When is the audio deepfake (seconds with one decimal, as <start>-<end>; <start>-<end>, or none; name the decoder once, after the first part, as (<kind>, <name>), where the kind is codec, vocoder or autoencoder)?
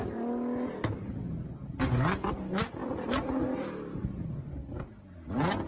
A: none